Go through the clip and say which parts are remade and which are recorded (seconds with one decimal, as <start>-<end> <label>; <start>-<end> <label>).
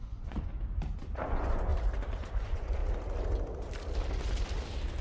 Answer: 0.0-0.5 remade; 0.5-1.0 recorded; 1.0-1.7 remade; 1.7-2.3 recorded; 2.3-2.8 remade; 2.8-5.0 recorded